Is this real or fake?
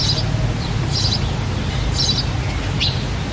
real